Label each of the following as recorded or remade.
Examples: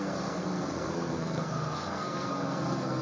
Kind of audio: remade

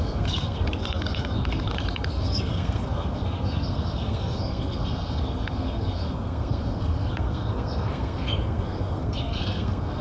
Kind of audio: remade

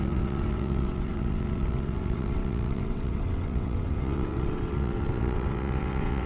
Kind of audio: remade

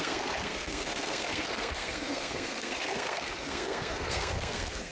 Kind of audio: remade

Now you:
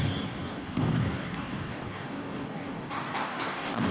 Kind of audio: remade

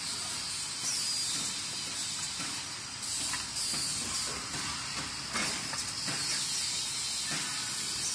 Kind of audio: recorded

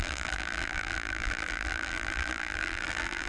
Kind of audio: remade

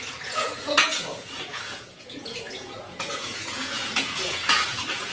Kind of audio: remade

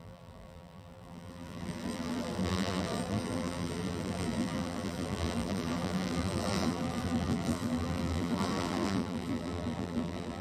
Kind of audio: remade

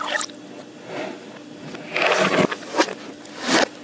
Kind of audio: recorded